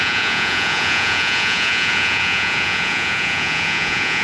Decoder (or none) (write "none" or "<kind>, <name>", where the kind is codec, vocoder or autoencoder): vocoder, Vocos